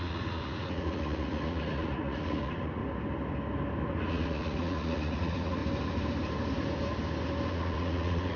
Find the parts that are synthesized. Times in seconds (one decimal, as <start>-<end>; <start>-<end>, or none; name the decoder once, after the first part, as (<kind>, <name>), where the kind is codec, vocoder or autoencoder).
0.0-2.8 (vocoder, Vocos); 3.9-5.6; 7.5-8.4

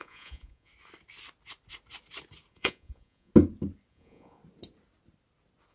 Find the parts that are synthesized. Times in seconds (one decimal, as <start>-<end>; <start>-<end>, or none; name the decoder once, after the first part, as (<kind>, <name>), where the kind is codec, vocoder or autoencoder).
0.0-0.7 (vocoder, Vocos); 2.5-3.3; 3.9-4.4

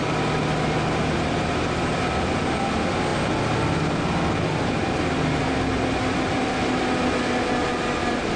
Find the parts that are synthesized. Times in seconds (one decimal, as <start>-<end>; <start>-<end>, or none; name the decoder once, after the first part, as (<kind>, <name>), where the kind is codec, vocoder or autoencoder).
none

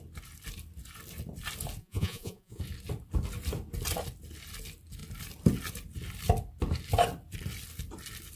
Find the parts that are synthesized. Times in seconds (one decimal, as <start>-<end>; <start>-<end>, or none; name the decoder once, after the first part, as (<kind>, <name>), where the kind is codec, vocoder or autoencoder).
1.8-2.6 (vocoder, Vocos)

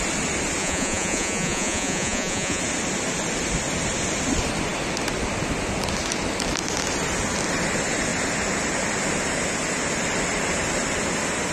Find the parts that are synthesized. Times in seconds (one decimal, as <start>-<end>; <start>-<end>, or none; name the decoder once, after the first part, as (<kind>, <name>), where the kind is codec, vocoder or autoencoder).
0.6-2.6 (vocoder, Vocos)

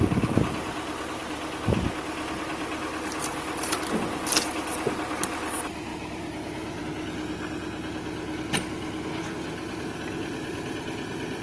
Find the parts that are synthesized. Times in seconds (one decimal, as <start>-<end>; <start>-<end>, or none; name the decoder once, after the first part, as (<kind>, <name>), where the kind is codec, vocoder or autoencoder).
5.9-6.8 (vocoder, BigVGAN v2)

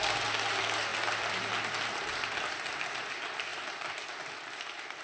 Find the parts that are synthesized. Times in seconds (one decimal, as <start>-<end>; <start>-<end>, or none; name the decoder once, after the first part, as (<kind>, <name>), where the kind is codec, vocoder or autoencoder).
none

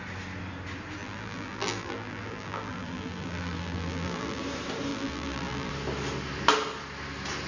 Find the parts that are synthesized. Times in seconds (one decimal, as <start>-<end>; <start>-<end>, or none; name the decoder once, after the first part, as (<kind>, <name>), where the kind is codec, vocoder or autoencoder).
1.0-4.4 (vocoder, BigVGAN v2); 4.9-5.7